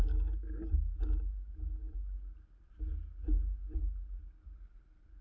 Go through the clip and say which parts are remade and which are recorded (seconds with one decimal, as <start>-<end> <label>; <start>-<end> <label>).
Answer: 0.0-5.2 recorded

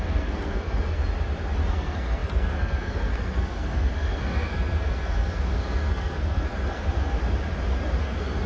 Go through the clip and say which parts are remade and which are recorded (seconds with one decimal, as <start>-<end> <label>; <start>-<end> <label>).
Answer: 0.0-1.0 remade; 1.0-1.7 recorded; 1.7-7.2 remade; 7.2-8.0 recorded; 8.0-8.5 remade

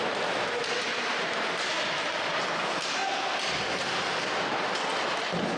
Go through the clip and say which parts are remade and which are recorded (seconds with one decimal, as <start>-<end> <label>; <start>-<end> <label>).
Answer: 0.0-0.6 recorded; 0.6-2.6 remade; 2.6-5.6 recorded

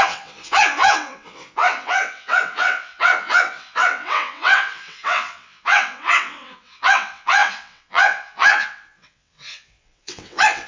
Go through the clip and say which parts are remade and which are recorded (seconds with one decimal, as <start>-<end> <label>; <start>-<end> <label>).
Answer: 0.0-10.7 remade

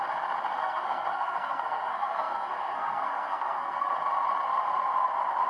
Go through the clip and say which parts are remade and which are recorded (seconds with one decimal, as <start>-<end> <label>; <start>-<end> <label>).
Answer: 0.0-0.6 recorded; 0.6-3.9 remade; 3.9-5.5 recorded

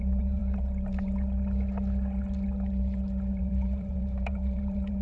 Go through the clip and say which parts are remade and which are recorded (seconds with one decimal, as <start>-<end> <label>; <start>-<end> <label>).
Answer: 0.0-0.4 remade; 0.4-3.4 recorded; 3.4-5.0 remade